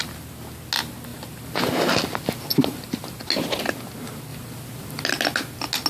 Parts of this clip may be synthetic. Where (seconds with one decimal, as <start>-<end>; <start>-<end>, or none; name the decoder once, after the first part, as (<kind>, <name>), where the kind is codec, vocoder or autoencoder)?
1.1-1.7 (vocoder, BigVGAN v2); 2.5-3.2